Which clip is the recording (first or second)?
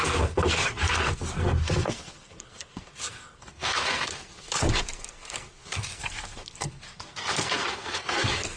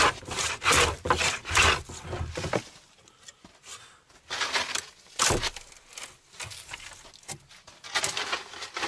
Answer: second